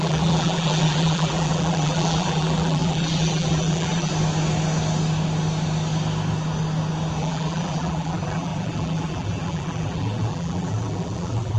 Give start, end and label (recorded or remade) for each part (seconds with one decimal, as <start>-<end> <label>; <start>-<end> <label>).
0.0-4.1 remade; 4.1-7.2 recorded; 7.2-11.6 remade